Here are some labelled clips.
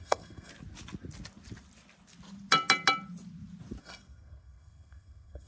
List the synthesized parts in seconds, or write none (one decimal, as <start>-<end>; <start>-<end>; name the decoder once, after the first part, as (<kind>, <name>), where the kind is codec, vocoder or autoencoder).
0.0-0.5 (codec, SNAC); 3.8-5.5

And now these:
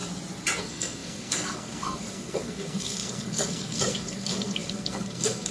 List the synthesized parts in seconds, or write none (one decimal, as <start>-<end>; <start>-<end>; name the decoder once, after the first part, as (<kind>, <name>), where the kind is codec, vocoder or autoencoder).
0.6-5.5 (codec, SNAC)

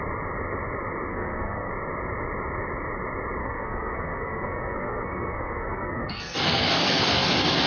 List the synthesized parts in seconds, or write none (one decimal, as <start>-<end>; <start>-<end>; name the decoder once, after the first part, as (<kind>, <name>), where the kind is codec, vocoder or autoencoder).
1.1-1.7 (codec, SNAC); 3.4-7.7

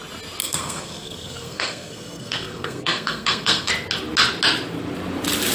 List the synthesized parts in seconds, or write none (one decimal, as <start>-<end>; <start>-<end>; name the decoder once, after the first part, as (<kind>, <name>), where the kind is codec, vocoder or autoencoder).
0.4-3.7 (codec, SNAC)